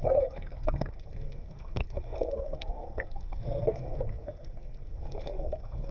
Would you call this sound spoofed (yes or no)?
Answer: yes